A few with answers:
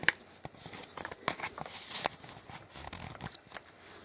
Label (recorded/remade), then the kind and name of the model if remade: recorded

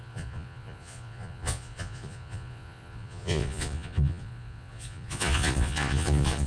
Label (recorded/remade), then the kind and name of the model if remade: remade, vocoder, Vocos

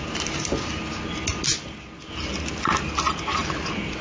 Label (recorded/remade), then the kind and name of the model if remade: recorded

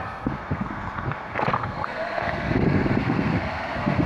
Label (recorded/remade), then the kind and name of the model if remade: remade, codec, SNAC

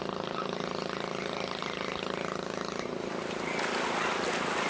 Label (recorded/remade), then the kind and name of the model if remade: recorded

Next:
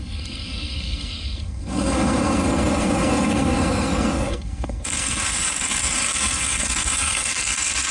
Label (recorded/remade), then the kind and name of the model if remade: remade, codec, SNAC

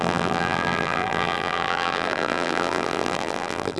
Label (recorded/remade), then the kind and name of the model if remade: remade, vocoder, BigVGAN v2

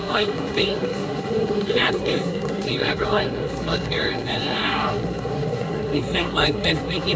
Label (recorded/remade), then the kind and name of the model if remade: remade, codec, SNAC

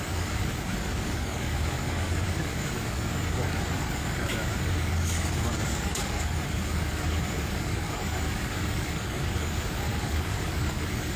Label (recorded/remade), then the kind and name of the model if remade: remade, codec, DAC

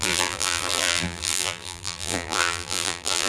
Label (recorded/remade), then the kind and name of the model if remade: remade, vocoder, BigVGAN v2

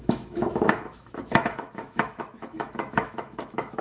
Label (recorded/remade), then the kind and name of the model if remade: remade, autoencoder, DAC-VAE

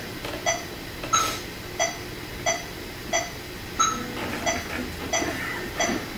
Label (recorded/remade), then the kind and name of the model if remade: recorded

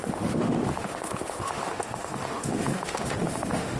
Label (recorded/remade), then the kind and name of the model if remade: remade, autoencoder, DAC-VAE